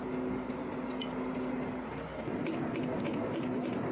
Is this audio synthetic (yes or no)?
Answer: no